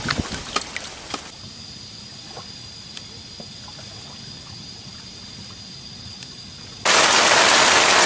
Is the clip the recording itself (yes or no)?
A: yes